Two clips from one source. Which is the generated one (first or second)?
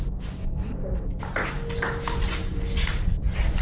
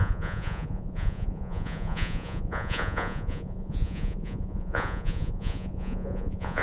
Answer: second